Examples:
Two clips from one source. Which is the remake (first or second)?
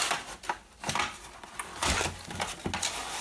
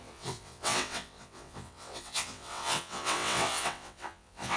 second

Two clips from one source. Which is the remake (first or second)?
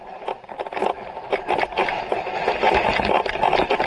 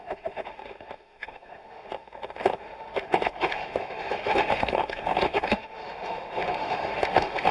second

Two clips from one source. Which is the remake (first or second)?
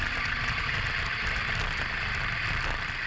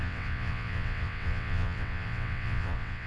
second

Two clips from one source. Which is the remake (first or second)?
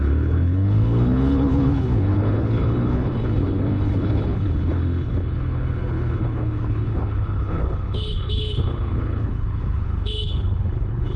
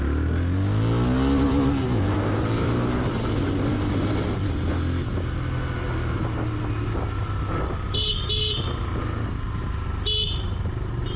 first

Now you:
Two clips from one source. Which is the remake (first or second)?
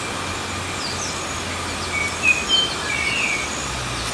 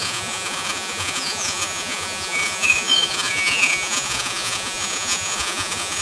second